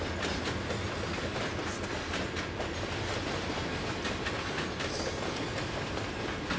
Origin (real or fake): real